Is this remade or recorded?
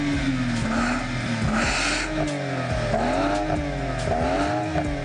recorded